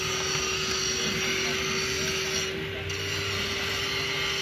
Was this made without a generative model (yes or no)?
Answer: yes